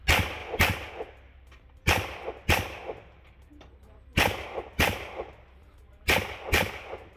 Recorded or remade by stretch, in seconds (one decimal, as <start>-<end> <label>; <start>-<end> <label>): 0.0-7.2 recorded